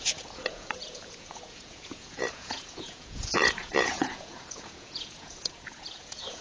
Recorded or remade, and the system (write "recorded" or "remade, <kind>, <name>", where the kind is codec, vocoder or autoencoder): remade, vocoder, Vocos